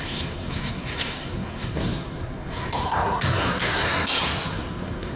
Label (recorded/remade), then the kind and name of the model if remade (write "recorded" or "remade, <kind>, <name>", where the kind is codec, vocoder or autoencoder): remade, codec, SNAC